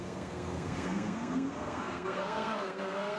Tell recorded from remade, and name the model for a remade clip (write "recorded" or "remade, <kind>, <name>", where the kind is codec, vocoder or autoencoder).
remade, codec, SNAC